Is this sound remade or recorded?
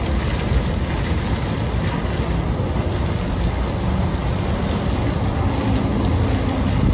recorded